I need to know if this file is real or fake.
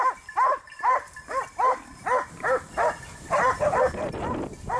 real